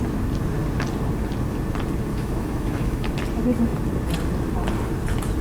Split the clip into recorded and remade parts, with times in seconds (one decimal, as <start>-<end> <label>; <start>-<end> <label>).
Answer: 0.0-2.1 recorded; 2.1-3.1 remade; 3.1-5.4 recorded